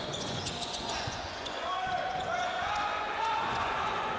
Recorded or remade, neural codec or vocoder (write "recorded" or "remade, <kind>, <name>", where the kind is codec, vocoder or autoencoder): remade, vocoder, Vocos